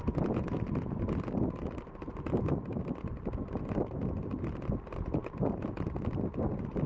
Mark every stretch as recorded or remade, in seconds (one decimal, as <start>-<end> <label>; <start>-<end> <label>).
0.0-6.9 recorded